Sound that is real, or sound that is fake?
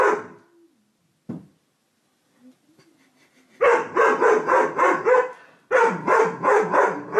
real